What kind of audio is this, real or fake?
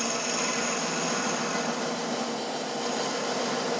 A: real